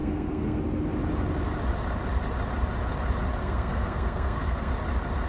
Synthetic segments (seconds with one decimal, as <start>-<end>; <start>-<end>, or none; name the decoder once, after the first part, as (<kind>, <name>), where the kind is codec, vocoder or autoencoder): 0.0-0.6 (codec, SNAC); 3.4-4.7